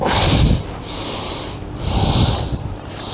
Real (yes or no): yes